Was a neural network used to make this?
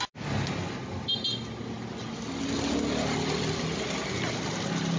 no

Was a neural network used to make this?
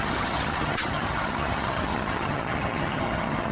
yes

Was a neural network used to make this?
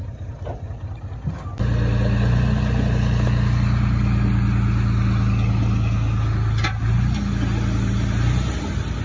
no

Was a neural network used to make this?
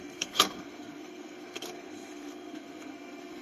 yes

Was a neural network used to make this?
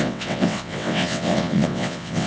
yes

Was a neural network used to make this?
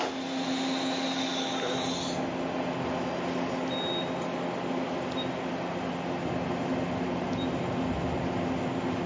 no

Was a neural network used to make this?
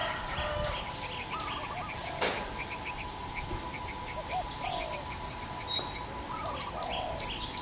no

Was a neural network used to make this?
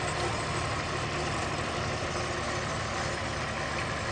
no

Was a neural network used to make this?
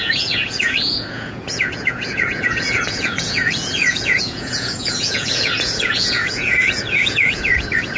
yes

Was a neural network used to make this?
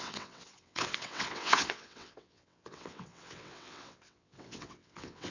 yes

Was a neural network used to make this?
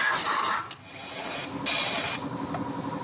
no